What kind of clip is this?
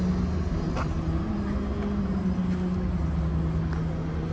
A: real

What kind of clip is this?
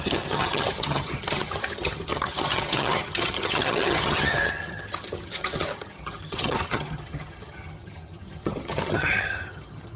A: fake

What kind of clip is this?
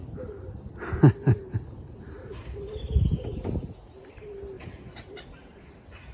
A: real